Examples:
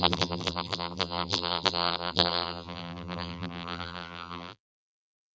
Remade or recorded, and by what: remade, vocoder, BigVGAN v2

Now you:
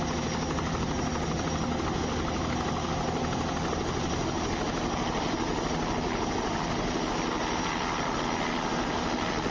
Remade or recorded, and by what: recorded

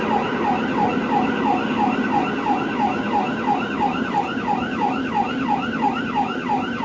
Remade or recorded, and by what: remade, vocoder, BigVGAN v2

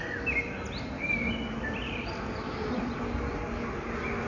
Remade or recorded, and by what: recorded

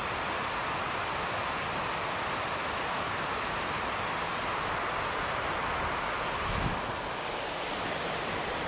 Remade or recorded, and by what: recorded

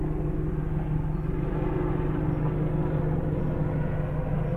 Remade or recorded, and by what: recorded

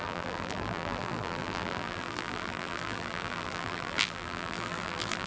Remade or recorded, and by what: remade, vocoder, BigVGAN v2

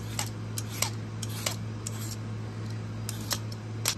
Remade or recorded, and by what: recorded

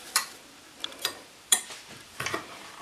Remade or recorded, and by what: remade, vocoder, BigVGAN v2